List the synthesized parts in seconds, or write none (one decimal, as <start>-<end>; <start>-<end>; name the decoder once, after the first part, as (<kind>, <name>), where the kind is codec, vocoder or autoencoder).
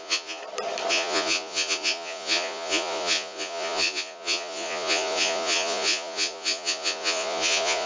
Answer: 0.0-0.4 (vocoder, Vocos); 0.9-7.9